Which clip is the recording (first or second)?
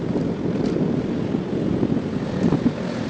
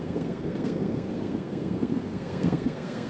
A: first